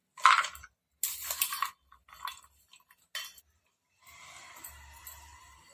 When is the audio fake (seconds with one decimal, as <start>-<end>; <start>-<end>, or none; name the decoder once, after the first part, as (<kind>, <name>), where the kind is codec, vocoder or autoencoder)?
none